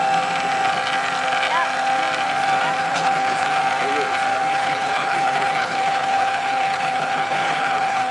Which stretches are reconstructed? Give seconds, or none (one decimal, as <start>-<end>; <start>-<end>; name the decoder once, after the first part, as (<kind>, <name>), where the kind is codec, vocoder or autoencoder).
2.8-3.6 (codec, HILCodec); 4.5-8.1